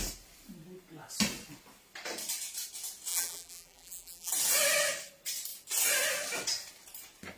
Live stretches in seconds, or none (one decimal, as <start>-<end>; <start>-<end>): 0.0-3.1; 4.3-7.4